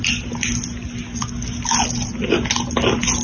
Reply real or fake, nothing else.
real